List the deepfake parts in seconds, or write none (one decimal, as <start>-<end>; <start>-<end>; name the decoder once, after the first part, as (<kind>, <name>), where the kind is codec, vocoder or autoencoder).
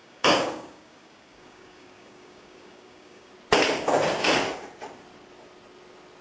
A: 0.0-3.3 (codec, DAC)